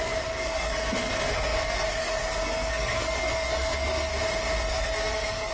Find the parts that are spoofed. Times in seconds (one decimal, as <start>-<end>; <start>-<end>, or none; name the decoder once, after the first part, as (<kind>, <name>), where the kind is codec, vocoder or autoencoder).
0.0-4.1 (codec, SNAC); 4.7-5.5